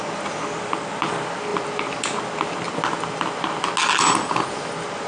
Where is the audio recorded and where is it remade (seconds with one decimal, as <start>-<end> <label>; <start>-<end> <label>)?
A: 0.0-5.1 recorded